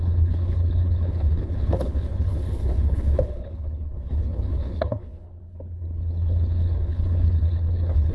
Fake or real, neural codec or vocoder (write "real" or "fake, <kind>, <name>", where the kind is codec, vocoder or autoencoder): fake, codec, HILCodec